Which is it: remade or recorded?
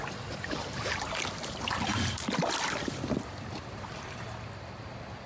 recorded